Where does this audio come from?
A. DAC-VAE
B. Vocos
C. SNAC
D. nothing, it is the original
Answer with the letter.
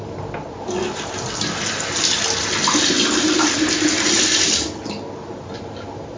D